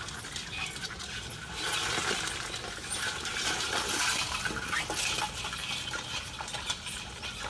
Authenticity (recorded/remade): recorded